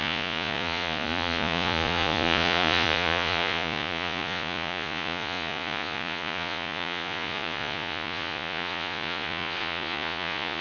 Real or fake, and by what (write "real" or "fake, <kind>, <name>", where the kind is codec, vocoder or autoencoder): fake, vocoder, Vocos